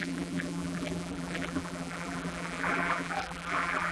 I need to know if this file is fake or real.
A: fake